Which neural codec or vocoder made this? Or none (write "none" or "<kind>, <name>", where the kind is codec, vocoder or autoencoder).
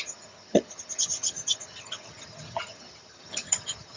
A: vocoder, HiFi-GAN